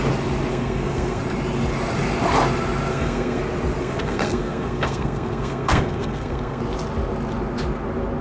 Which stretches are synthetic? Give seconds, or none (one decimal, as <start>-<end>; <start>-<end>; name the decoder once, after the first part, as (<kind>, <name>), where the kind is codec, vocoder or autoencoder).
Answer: 0.5-1.2 (codec, SNAC); 2.9-3.4; 3.8-6.6